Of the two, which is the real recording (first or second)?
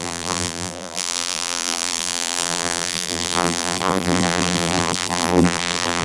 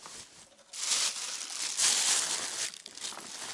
second